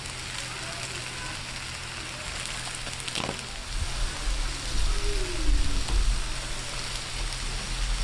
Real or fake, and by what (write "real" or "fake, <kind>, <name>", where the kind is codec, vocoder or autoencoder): real